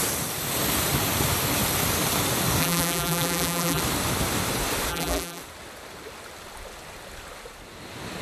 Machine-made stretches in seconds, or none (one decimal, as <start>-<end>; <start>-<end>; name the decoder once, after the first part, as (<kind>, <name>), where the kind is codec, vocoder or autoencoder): 2.6-3.8 (vocoder, BigVGAN v2); 4.9-5.4